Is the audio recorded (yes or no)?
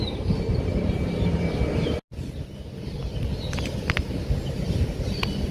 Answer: yes